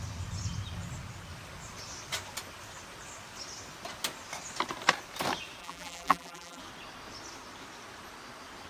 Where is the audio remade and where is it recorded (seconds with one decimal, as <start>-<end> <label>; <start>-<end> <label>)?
0.0-5.6 recorded; 5.6-6.6 remade; 6.6-8.7 recorded